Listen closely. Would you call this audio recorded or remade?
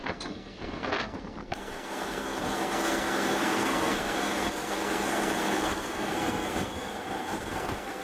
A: remade